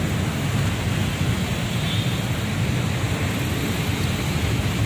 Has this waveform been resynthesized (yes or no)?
no